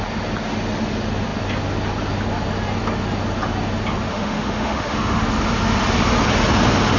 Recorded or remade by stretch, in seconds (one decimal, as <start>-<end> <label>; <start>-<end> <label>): 0.0-4.1 recorded; 4.1-5.2 remade; 5.2-7.0 recorded